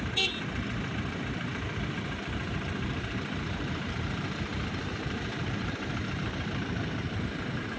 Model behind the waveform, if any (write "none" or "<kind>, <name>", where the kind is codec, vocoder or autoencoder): vocoder, BigVGAN v2